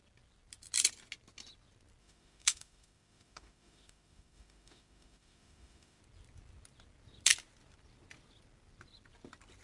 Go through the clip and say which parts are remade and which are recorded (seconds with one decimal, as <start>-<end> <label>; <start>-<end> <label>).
0.0-2.0 recorded; 2.0-6.0 remade; 6.0-9.6 recorded